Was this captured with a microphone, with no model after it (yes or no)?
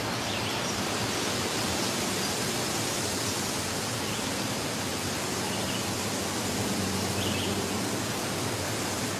yes